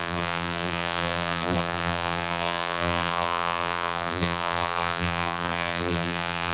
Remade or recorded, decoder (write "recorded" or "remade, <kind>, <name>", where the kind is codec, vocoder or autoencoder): remade, vocoder, BigVGAN v2